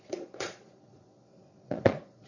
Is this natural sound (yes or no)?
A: no